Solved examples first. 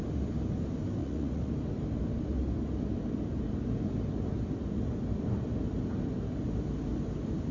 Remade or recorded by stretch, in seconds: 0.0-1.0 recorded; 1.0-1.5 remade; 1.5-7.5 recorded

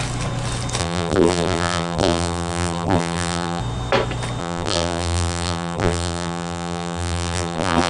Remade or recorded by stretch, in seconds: 0.0-0.8 recorded; 0.8-3.6 remade; 3.6-4.4 recorded; 4.4-7.9 remade